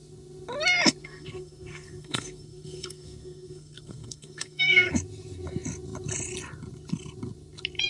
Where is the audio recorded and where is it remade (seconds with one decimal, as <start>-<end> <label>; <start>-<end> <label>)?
0.0-1.0 recorded; 1.0-4.9 remade; 4.9-7.9 recorded